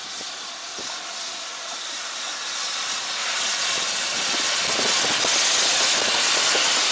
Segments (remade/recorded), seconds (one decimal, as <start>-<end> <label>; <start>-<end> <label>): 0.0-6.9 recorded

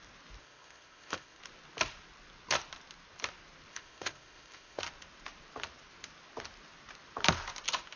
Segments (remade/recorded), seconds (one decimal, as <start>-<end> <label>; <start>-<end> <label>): 0.0-0.4 recorded; 0.4-1.4 remade; 1.4-3.7 recorded; 3.7-4.8 remade; 4.8-8.0 recorded

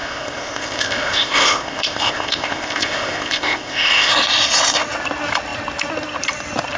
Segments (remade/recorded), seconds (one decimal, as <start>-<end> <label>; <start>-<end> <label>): 0.0-4.1 remade; 4.1-6.8 recorded